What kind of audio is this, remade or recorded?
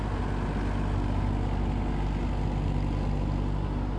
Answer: recorded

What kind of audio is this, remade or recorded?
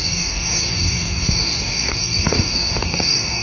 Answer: remade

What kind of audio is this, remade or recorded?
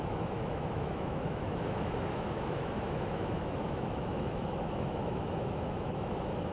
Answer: remade